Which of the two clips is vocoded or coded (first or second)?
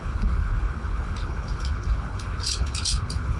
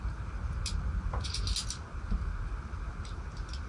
first